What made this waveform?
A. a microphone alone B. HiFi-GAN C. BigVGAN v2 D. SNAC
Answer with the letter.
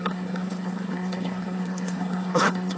D